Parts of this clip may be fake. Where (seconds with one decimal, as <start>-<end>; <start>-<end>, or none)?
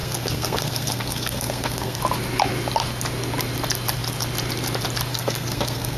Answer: 0.0-2.0; 5.1-6.0